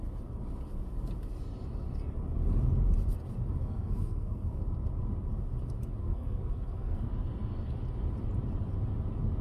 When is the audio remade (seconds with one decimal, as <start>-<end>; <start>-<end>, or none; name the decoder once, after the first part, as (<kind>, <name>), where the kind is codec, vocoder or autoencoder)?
3.6-4.6 (codec, SNAC); 6.0-7.1